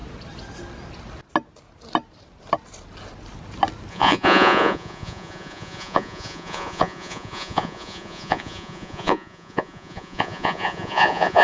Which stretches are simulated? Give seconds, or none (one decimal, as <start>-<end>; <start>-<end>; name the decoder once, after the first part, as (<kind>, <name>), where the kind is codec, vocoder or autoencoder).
3.9-11.4 (vocoder, Vocos)